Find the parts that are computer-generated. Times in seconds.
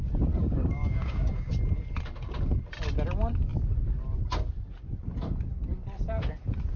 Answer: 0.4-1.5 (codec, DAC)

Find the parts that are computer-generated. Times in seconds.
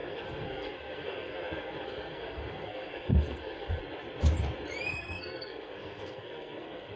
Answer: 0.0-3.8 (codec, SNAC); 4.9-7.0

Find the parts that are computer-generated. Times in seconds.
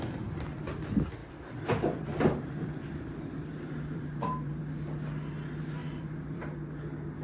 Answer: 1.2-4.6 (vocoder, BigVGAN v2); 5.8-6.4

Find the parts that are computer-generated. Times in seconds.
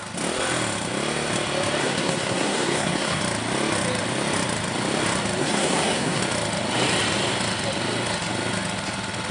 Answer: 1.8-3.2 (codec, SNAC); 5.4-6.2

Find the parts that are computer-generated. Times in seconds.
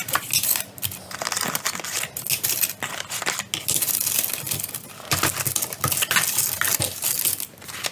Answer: none